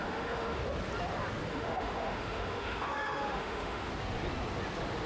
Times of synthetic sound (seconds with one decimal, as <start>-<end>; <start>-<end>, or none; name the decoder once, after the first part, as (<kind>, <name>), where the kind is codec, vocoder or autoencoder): 0.0-0.6 (autoencoder, DAC-VAE); 1.5-3.9

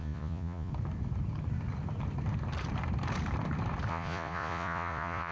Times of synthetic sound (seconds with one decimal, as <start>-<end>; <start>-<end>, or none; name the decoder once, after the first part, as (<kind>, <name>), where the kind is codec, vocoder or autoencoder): 0.0-0.7 (vocoder, Vocos); 3.9-5.3

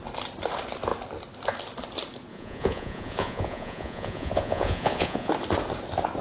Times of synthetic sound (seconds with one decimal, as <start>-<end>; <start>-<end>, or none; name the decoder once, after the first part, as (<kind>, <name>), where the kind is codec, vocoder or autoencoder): 2.3-5.3 (vocoder, Vocos)

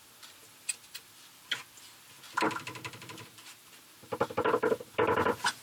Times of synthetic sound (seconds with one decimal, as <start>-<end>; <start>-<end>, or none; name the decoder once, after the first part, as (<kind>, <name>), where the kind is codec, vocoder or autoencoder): none

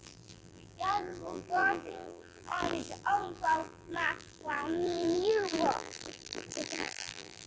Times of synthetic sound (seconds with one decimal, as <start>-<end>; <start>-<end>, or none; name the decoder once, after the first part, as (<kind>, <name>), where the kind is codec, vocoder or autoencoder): 0.0-7.5 (vocoder, BigVGAN v2)

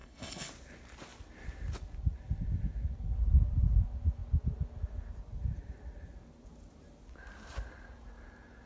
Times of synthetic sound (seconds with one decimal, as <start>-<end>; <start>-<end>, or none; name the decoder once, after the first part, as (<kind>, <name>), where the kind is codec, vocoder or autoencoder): 0.0-0.5 (codec, HILCodec)